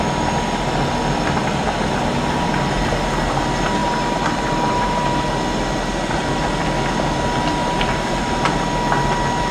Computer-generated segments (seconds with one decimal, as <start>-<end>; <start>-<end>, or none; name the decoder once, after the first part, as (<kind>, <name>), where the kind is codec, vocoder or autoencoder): 3.8-5.3 (vocoder, BigVGAN v2); 7.6-8.2